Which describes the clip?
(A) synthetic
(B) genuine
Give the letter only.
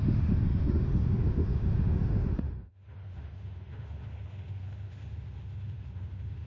A